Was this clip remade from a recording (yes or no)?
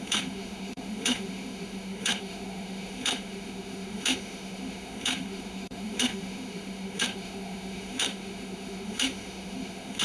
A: yes